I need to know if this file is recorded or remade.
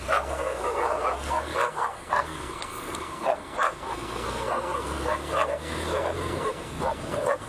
remade